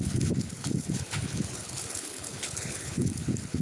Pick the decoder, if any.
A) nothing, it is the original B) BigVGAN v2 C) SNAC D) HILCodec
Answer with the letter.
D